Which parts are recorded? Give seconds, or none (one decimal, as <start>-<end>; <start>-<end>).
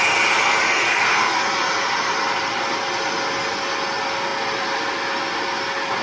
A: 0.0-0.9; 1.4-6.0